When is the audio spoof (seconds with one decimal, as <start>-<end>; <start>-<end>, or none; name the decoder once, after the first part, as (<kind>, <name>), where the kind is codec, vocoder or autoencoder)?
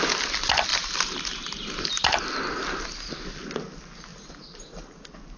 0.7-2.2 (vocoder, BigVGAN v2); 4.1-4.9